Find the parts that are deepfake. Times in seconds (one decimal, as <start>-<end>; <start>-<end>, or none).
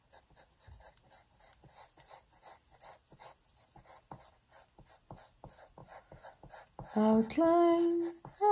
none